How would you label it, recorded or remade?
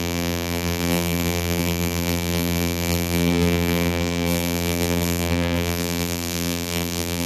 remade